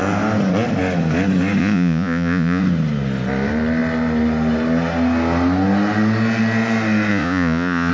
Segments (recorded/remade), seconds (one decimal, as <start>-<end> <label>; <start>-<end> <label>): 0.0-1.6 recorded; 1.6-2.6 remade; 2.6-7.1 recorded; 7.1-7.9 remade